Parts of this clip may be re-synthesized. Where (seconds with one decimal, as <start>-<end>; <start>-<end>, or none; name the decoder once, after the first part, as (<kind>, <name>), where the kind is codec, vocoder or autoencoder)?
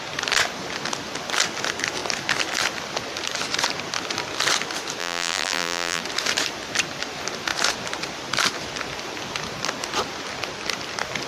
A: 5.0-6.0 (vocoder, BigVGAN v2)